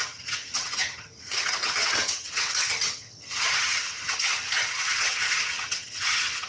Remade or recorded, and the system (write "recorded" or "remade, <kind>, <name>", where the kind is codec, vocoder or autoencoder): remade, vocoder, HiFi-GAN